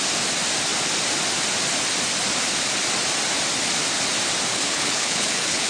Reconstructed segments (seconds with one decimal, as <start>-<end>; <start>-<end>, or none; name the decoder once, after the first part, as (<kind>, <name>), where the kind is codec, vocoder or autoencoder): 4.5-5.7 (codec, HILCodec)